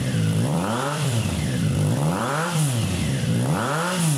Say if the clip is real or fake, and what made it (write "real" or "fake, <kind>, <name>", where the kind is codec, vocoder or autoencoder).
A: fake, vocoder, BigVGAN v2